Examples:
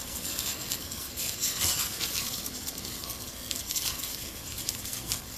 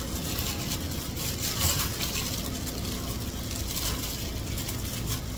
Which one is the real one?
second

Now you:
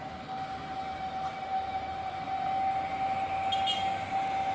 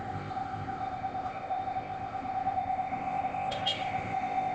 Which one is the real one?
first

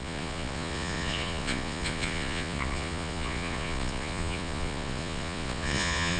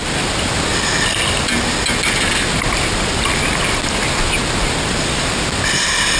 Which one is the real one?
second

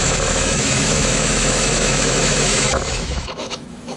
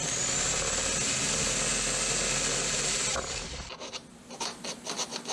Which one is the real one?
second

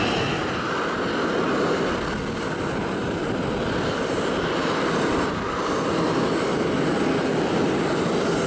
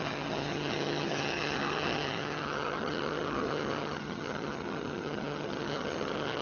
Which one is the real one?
first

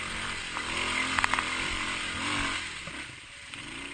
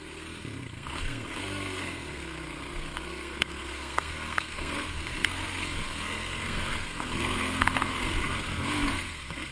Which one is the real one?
first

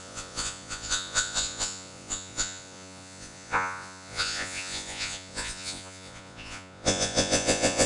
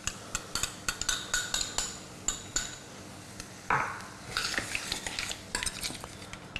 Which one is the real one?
second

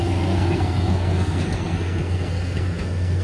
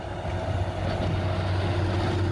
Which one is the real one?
second